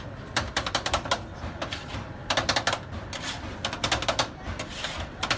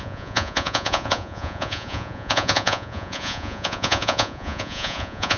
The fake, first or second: second